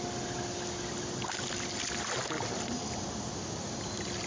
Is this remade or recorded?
recorded